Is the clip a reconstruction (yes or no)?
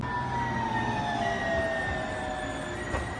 no